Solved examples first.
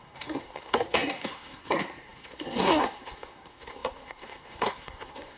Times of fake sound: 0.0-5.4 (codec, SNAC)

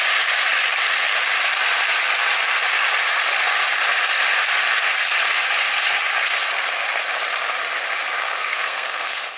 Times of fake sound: 8.2-9.4 (codec, SNAC)

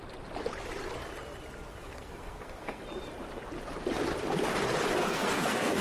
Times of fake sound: 1.7-2.8 (codec, SNAC); 5.0-5.8

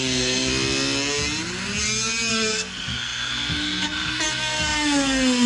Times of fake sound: 0.0-0.5 (codec, SNAC); 2.3-5.5